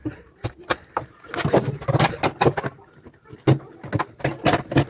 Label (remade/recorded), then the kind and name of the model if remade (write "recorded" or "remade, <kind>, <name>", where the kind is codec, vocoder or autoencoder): recorded